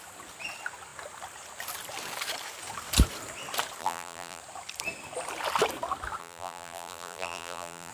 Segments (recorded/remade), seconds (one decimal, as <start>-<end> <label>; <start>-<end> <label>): 0.0-3.8 recorded; 3.8-4.4 remade; 4.4-6.2 recorded; 6.2-7.9 remade